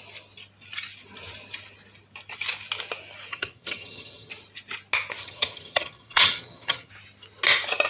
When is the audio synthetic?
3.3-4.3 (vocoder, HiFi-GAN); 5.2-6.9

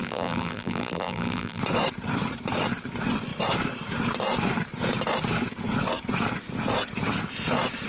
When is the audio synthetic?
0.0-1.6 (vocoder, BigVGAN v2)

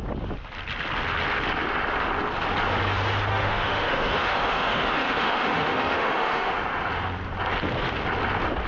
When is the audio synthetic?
3.3-6.5 (autoencoder, DAC-VAE)